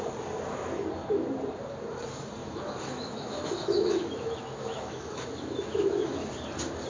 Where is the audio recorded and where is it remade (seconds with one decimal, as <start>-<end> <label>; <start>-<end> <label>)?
0.0-2.4 recorded; 2.4-6.3 remade; 6.3-6.9 recorded